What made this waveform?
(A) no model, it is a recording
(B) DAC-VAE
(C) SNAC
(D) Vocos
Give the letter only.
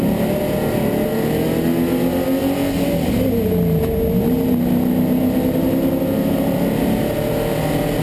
A